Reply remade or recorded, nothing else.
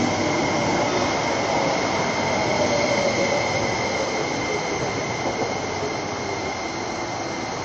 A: recorded